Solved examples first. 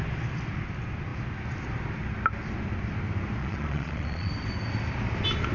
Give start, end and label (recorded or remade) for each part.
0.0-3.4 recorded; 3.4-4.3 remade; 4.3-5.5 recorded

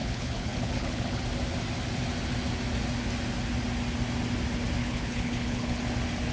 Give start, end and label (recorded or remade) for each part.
0.0-1.2 remade; 1.2-4.8 recorded; 4.8-5.8 remade; 5.8-6.3 recorded

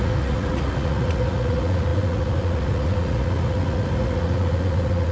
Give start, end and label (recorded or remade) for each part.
0.0-5.1 remade

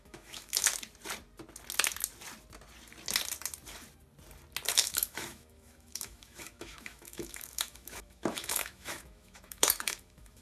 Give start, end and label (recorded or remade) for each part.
0.0-0.7 remade; 0.7-4.7 recorded; 4.7-10.4 remade